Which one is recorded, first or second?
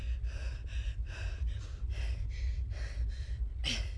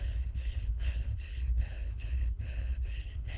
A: first